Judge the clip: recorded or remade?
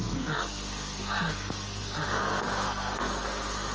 remade